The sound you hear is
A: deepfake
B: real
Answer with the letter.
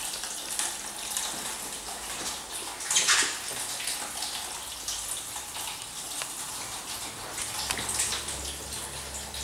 B